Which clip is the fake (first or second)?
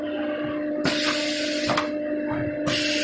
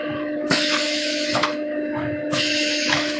second